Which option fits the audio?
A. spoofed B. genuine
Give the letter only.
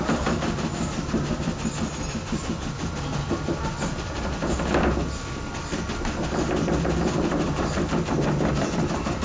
B